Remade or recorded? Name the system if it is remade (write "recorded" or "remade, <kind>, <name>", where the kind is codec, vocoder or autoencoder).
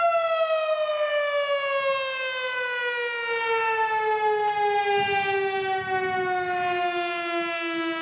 recorded